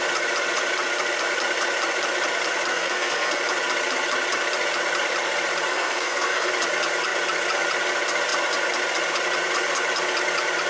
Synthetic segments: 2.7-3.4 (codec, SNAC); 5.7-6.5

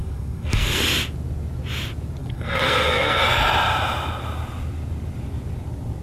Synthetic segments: 0.0-0.8 (codec, SNAC); 2.2-3.2

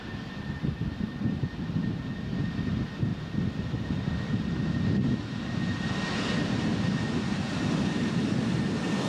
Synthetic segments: none

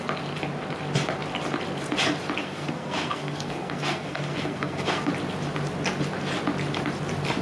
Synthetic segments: 2.4-5.1 (codec, SNAC)

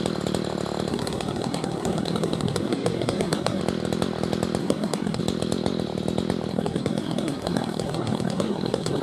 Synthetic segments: 0.9-3.6 (codec, SNAC); 4.6-5.2; 6.5-9.0

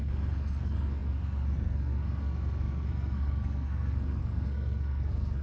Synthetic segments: 0.0-5.4 (codec, SNAC)

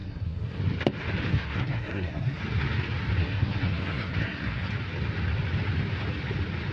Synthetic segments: 0.0-0.6 (codec, SNAC); 1.3-2.4; 3.2-4.7